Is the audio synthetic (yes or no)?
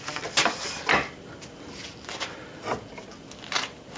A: no